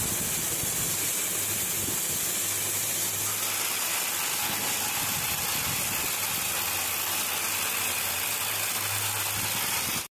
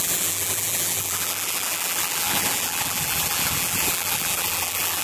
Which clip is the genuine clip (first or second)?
first